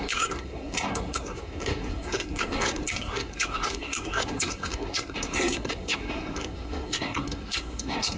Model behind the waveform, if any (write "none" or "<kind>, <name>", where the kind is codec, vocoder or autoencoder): codec, SNAC